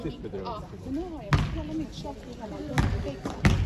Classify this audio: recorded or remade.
recorded